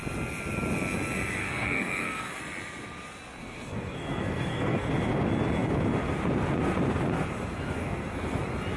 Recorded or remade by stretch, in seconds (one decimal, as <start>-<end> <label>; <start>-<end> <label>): 0.0-1.4 recorded; 1.4-2.4 remade; 2.4-3.4 recorded; 3.4-4.9 remade; 4.9-7.8 recorded; 7.8-8.4 remade; 8.4-8.8 recorded